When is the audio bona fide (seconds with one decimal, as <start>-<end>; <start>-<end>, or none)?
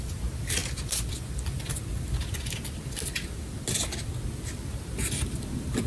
0.0-5.9